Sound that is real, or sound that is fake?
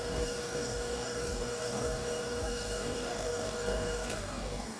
fake